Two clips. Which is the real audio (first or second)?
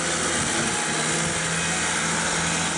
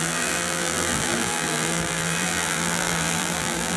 first